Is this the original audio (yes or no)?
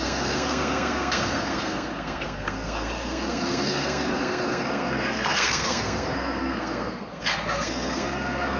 no